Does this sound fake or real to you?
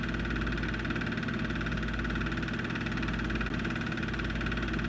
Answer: real